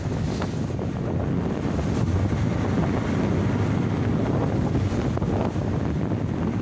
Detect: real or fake real